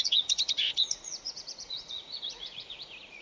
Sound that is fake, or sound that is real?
fake